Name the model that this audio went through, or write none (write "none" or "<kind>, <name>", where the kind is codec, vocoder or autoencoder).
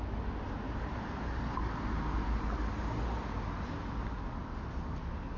none